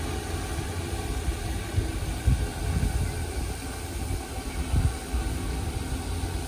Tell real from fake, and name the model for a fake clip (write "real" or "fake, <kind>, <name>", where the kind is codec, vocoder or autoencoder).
real